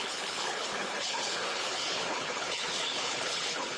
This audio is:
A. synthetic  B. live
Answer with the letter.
A